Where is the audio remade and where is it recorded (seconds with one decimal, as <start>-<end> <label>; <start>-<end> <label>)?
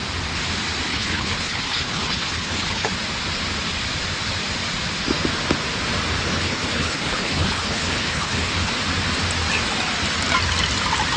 0.0-0.9 recorded; 0.9-2.9 remade; 2.9-6.3 recorded; 6.3-8.7 remade; 8.7-11.2 recorded